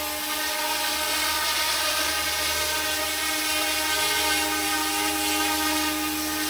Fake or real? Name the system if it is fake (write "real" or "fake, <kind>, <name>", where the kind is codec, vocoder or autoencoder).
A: real